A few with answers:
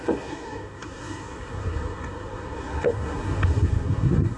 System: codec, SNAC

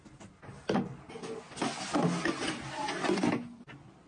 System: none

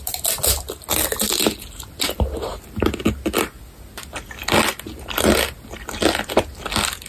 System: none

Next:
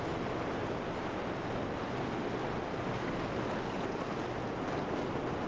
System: none